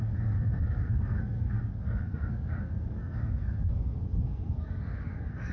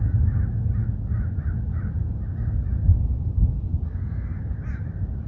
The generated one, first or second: first